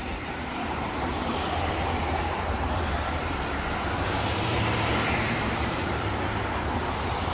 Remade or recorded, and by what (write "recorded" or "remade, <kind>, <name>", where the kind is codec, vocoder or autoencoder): remade, vocoder, BigVGAN v2